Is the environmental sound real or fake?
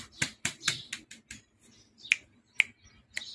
real